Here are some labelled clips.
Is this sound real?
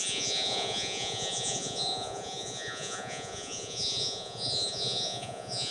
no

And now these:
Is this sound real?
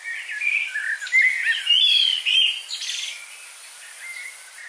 yes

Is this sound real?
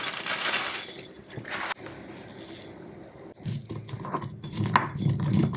yes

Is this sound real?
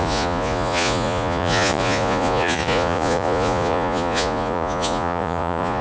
no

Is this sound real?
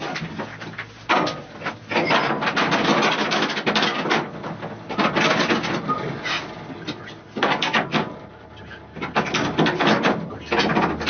yes